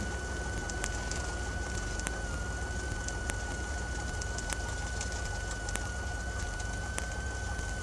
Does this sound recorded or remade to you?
recorded